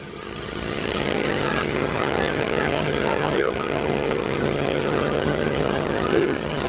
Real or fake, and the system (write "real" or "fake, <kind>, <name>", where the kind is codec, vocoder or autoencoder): fake, vocoder, HiFi-GAN